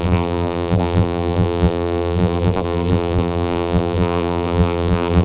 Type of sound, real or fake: fake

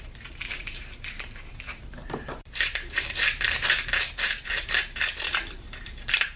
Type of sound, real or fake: fake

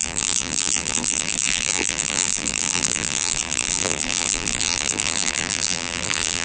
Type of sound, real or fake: fake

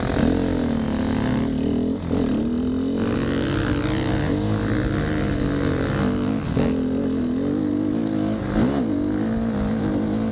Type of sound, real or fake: real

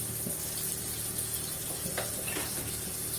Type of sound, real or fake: real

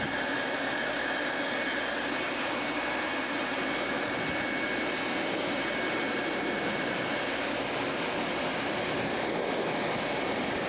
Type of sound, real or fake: real